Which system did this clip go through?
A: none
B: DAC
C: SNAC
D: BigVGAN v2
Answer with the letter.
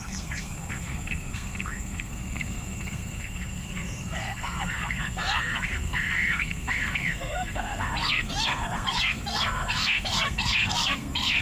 C